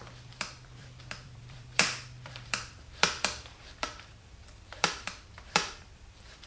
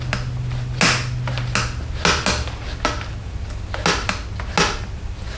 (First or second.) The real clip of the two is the second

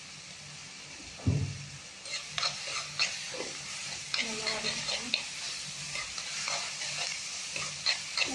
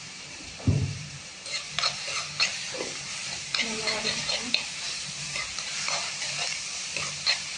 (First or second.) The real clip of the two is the first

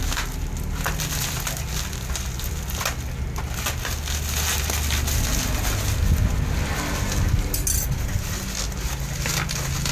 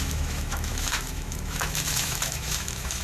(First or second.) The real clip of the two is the first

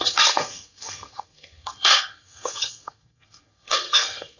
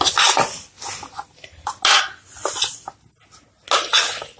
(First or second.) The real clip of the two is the second